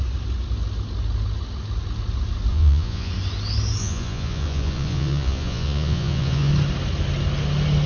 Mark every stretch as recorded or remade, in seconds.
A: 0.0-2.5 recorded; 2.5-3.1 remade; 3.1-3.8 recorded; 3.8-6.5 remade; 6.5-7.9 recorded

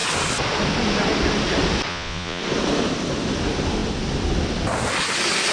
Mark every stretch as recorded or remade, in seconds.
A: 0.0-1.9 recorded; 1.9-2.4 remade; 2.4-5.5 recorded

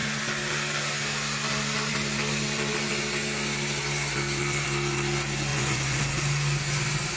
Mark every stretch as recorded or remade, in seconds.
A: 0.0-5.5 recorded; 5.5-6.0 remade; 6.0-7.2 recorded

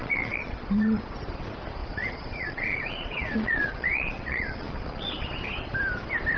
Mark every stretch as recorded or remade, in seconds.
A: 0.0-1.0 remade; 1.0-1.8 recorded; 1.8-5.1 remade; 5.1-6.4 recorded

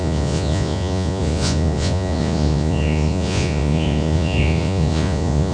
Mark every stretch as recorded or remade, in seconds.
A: 0.0-5.5 remade

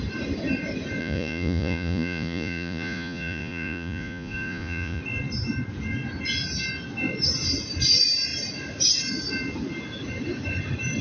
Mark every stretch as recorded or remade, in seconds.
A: 0.0-1.0 recorded; 1.0-5.0 remade; 5.0-11.0 recorded

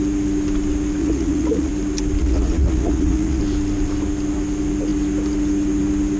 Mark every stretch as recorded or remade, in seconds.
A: 0.0-1.0 recorded; 1.0-1.7 remade; 1.7-2.2 recorded; 2.2-3.4 remade; 3.4-6.2 recorded